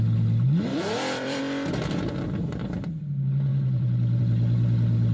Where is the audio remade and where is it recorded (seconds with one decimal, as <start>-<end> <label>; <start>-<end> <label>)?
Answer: 0.0-0.7 recorded; 0.7-1.4 remade; 1.4-3.5 recorded; 3.5-4.2 remade; 4.2-5.1 recorded

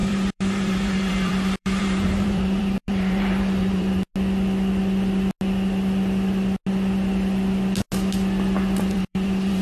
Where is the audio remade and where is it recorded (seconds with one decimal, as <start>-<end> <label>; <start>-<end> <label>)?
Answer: 0.0-4.1 remade; 4.1-8.8 recorded; 8.8-9.6 remade

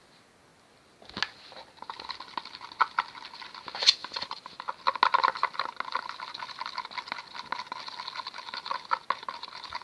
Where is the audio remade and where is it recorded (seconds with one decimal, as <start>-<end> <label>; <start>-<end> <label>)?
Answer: 0.0-4.0 recorded; 4.0-4.7 remade; 4.7-9.8 recorded

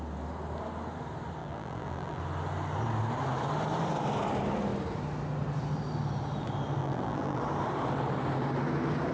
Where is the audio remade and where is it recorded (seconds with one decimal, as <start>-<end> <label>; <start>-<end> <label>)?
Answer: 0.0-1.4 recorded; 1.4-2.2 remade; 2.2-6.8 recorded; 6.8-7.4 remade; 7.4-9.1 recorded

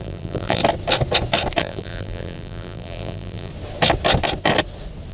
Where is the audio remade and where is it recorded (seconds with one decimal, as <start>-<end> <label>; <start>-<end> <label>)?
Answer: 0.0-0.6 remade; 0.6-1.6 recorded; 1.6-3.5 remade; 3.5-5.1 recorded

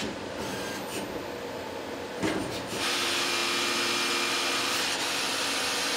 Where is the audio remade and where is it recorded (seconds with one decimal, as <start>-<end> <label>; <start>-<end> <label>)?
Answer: 0.0-0.9 remade; 0.9-2.0 recorded; 2.0-3.4 remade; 3.4-4.3 recorded; 4.3-6.0 remade

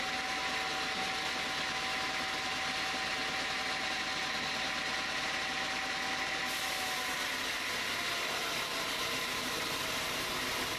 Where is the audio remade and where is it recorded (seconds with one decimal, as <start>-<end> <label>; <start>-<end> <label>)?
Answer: 0.0-9.0 recorded; 9.0-10.3 remade; 10.3-10.8 recorded